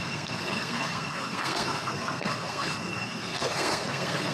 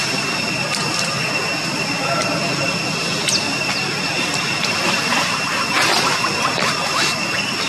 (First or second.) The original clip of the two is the second